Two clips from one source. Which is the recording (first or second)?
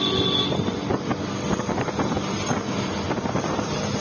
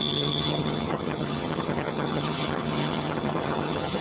first